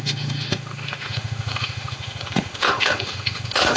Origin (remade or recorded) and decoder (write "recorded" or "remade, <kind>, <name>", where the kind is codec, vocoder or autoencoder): remade, autoencoder, DAC-VAE